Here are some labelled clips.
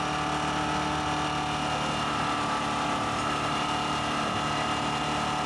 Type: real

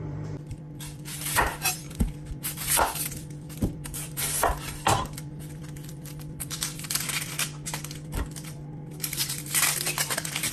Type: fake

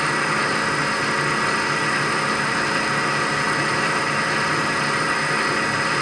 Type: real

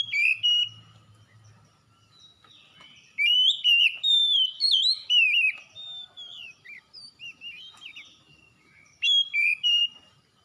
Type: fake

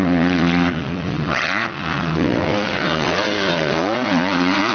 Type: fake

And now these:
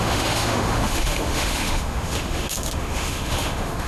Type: fake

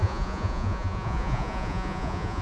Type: fake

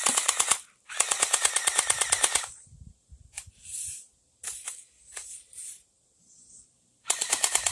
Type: fake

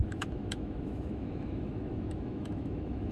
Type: fake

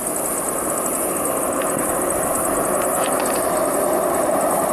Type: real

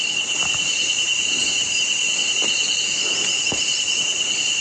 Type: real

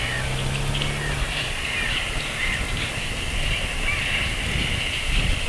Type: real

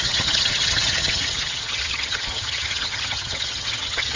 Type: fake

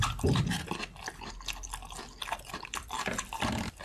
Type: real